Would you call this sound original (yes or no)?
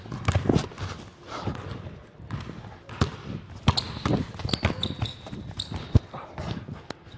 yes